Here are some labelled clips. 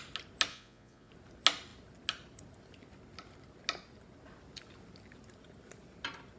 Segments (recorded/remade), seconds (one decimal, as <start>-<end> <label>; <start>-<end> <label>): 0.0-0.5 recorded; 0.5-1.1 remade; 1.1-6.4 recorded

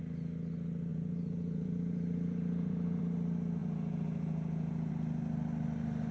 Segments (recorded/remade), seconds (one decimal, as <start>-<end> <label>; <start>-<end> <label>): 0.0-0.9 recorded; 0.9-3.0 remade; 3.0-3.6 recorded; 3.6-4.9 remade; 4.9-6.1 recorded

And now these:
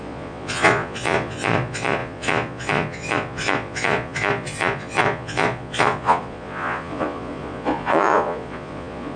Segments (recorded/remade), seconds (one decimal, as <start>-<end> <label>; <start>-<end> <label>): 0.0-9.2 remade

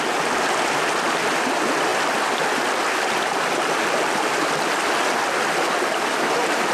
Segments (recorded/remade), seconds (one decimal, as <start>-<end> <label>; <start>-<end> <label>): 0.0-6.7 recorded

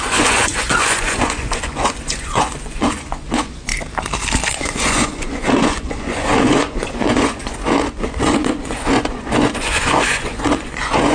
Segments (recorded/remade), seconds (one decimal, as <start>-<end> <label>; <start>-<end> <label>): 0.0-3.7 remade; 3.7-4.5 recorded; 4.5-11.1 remade